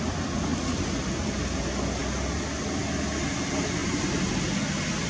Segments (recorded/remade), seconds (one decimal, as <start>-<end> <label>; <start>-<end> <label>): 0.0-3.8 recorded; 3.8-4.4 remade; 4.4-5.1 recorded